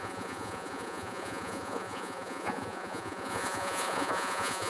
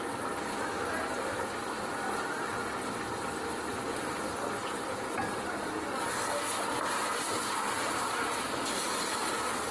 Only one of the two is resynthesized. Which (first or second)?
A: first